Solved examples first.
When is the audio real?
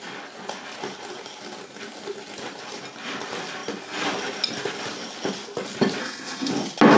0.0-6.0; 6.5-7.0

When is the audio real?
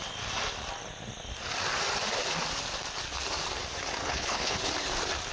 0.0-4.0; 4.6-5.3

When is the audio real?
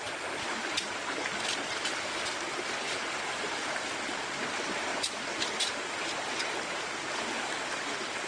0.0-8.3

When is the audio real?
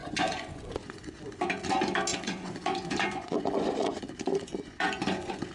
1.4-2.1